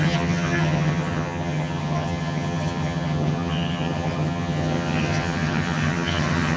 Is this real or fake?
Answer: fake